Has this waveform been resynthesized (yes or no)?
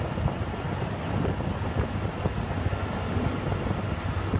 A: no